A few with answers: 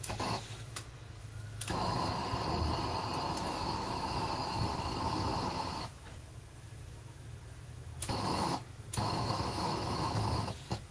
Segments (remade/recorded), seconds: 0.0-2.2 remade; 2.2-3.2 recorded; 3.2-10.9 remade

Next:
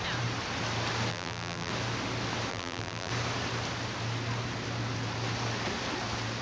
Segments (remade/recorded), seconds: 0.0-1.1 recorded; 1.1-1.7 remade; 1.7-2.5 recorded; 2.5-3.1 remade; 3.1-6.4 recorded

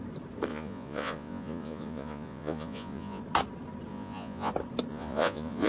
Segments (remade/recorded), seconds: 0.0-0.5 recorded; 0.5-3.2 remade; 3.2-3.9 recorded; 3.9-4.5 remade; 4.5-4.9 recorded; 4.9-5.7 remade

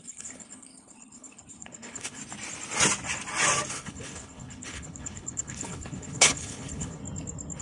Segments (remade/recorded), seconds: 0.0-2.2 remade; 2.2-3.7 recorded; 3.7-7.0 remade; 7.0-7.6 recorded

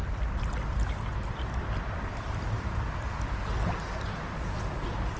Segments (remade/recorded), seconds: 0.0-3.1 remade; 3.1-5.2 recorded

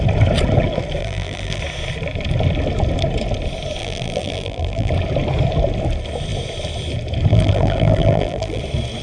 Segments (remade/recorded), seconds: 0.0-1.0 recorded; 1.0-1.6 remade; 1.6-3.8 recorded; 3.8-4.9 remade; 4.9-7.3 recorded; 7.3-8.6 remade; 8.6-9.0 recorded

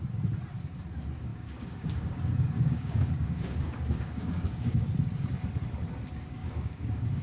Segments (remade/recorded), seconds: 0.0-1.3 recorded; 1.3-4.9 remade; 4.9-6.4 recorded; 6.4-7.2 remade